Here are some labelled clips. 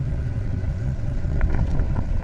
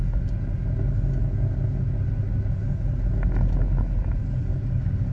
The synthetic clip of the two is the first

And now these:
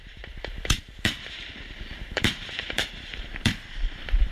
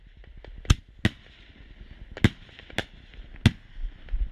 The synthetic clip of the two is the first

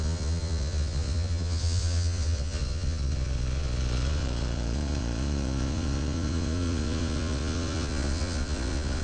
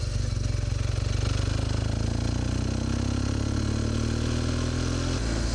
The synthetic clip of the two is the first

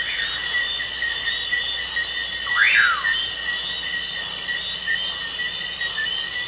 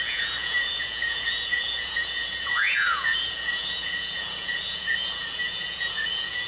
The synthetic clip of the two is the second